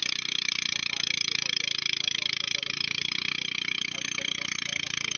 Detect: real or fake real